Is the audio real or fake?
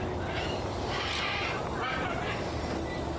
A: real